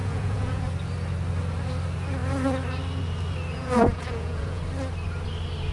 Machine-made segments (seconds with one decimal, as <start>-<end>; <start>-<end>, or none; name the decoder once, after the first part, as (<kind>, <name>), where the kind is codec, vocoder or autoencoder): 0.0-0.6 (vocoder, Vocos); 3.5-4.6